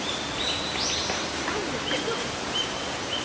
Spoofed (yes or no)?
no